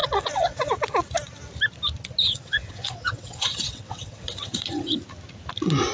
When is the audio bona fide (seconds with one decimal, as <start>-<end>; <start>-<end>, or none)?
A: 0.7-2.2; 5.0-5.9